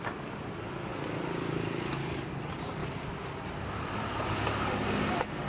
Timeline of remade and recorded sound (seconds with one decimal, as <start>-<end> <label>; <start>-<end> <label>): 0.0-0.9 remade; 0.9-2.3 recorded; 2.3-2.8 remade; 2.8-3.6 recorded; 3.6-5.5 remade